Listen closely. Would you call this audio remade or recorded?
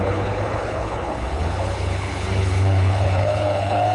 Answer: remade